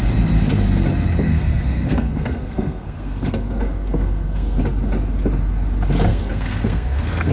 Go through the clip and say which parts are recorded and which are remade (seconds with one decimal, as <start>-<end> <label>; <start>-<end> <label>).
0.0-1.3 recorded; 1.3-4.6 remade; 4.6-6.1 recorded; 6.1-7.3 remade